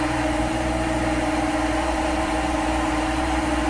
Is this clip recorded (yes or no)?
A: no